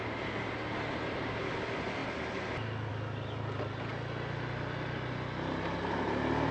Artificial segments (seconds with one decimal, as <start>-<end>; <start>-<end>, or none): none